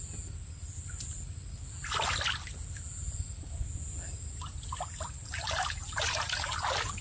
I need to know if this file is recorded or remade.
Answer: recorded